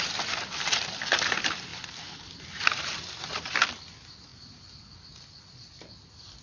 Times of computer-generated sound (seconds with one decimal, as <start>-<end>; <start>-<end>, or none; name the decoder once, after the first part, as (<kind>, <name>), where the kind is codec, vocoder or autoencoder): none